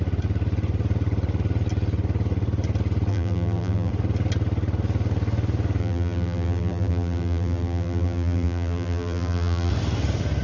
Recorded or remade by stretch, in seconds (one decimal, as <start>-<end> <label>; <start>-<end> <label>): 0.0-3.1 recorded; 3.1-3.9 remade; 3.9-5.8 recorded; 5.8-9.7 remade; 9.7-10.4 recorded

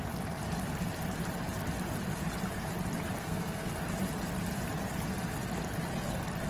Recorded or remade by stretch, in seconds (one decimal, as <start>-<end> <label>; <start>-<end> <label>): 0.0-3.2 recorded; 3.2-3.7 remade; 3.7-6.5 recorded

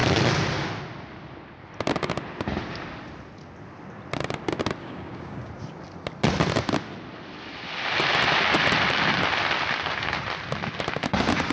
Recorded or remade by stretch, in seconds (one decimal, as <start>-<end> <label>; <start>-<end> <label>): 0.0-4.8 recorded; 4.8-5.5 remade; 5.5-11.5 recorded

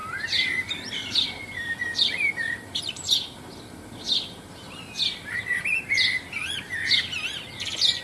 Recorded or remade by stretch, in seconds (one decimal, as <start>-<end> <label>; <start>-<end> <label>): 0.0-4.8 remade; 4.8-8.0 recorded

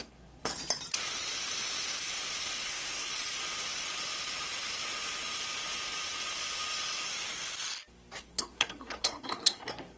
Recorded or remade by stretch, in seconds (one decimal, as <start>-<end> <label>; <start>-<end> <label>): 0.0-0.5 remade; 0.5-2.7 recorded; 2.7-3.1 remade; 3.1-8.2 recorded; 8.2-10.0 remade

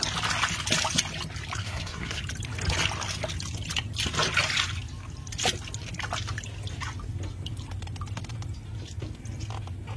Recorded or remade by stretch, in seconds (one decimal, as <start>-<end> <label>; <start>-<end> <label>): 0.0-1.6 recorded; 1.6-2.2 remade; 2.2-10.0 recorded

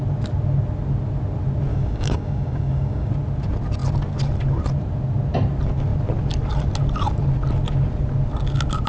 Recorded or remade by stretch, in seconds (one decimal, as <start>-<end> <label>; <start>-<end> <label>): 0.0-1.7 recorded; 1.7-3.1 remade; 3.1-8.9 recorded